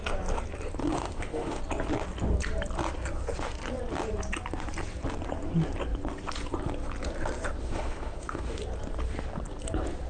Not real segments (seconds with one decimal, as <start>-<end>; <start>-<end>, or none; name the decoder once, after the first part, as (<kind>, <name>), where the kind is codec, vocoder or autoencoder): 0.8-1.6 (autoencoder, DAC-VAE); 7.6-8.6